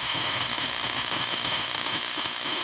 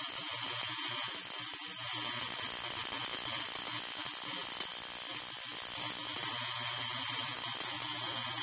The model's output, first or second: first